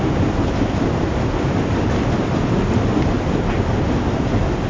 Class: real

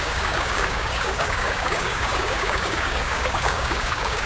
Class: fake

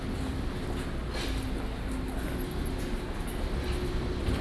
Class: real